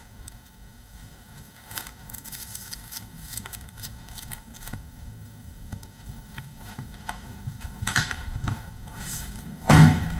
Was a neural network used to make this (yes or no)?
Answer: yes